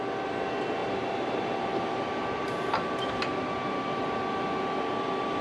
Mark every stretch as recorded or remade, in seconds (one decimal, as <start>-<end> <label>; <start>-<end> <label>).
0.0-0.8 recorded; 0.8-4.0 remade; 4.0-5.4 recorded